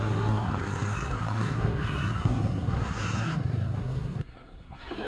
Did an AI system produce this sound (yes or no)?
yes